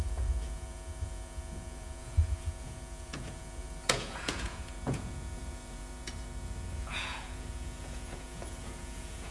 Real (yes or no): no